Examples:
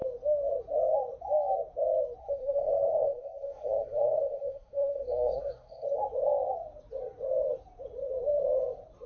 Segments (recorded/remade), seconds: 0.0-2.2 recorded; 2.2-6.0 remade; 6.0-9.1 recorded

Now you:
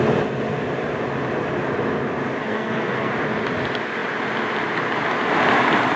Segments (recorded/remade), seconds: 0.0-2.4 recorded; 2.4-3.1 remade; 3.1-6.0 recorded

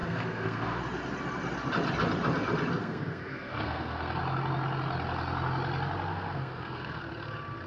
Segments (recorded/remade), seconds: 0.0-0.8 remade; 0.8-2.7 recorded; 2.7-4.2 remade; 4.2-6.1 recorded; 6.1-7.0 remade; 7.0-7.7 recorded